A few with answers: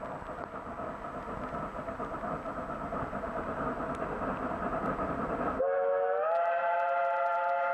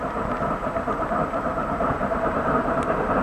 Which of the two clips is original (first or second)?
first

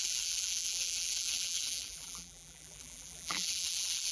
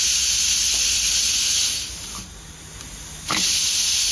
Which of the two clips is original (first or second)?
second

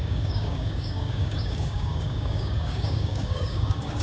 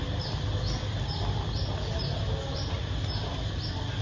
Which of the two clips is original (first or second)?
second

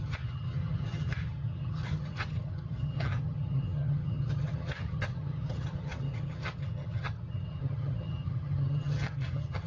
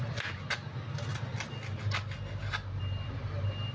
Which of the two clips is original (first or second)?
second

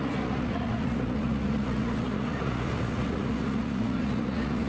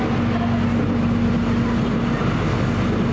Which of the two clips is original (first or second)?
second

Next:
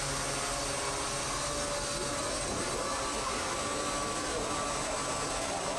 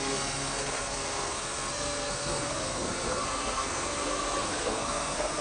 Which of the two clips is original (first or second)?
first